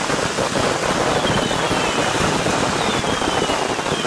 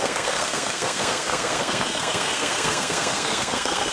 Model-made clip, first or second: second